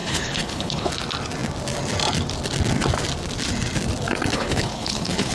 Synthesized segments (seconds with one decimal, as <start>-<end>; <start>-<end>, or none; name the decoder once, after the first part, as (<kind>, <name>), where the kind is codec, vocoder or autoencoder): 0.0-0.9 (codec, HILCodec); 4.3-5.3